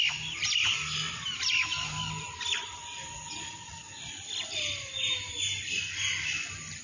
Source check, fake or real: real